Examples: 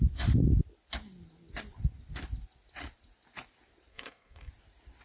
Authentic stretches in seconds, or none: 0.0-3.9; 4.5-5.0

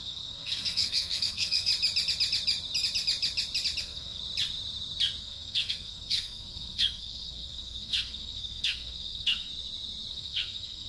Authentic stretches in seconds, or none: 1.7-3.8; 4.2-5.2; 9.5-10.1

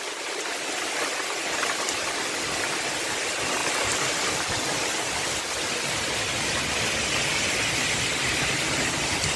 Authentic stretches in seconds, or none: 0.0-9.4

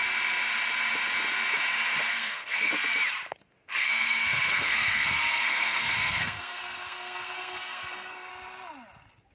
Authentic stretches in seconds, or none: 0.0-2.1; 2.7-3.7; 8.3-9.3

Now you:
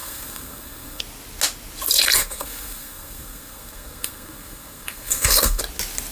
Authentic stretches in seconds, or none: 1.0-2.2; 5.6-6.1

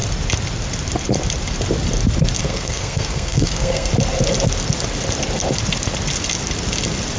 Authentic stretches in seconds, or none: 0.0-2.4; 3.9-7.2